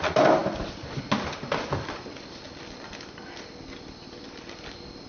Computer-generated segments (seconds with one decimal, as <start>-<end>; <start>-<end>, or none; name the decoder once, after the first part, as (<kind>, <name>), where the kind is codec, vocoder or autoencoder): none